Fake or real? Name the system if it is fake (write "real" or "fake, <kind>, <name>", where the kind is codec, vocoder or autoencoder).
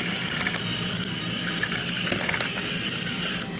real